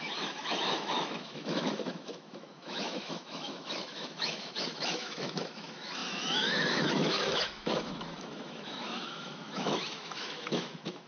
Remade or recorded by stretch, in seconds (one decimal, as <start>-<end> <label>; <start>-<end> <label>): 0.0-11.1 remade